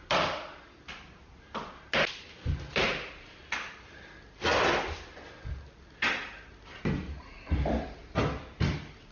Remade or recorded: recorded